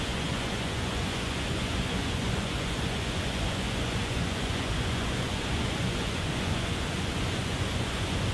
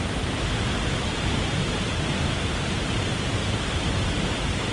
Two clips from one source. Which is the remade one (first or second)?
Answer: first